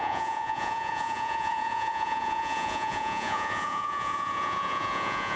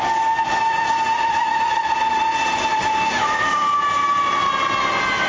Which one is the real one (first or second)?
second